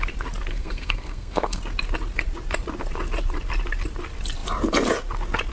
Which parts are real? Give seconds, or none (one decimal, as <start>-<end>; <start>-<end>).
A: 0.0-0.5; 1.6-5.5